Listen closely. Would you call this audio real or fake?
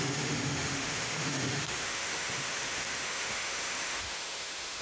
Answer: fake